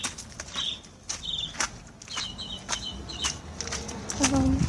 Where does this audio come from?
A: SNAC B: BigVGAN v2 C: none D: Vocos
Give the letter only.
C